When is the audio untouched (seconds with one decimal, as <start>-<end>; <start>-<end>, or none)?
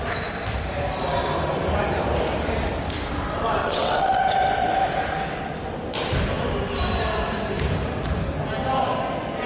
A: 0.0-3.6; 4.2-9.5